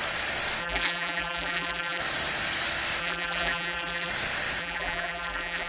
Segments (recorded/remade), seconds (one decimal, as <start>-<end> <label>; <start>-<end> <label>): 0.0-0.6 recorded; 0.6-2.0 remade; 2.0-3.0 recorded; 3.0-4.1 remade; 4.1-4.6 recorded; 4.6-5.7 remade